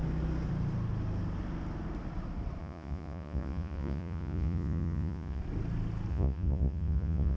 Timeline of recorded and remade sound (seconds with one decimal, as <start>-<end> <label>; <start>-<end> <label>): 0.0-2.6 recorded; 2.6-5.4 remade; 5.4-6.1 recorded; 6.1-7.4 remade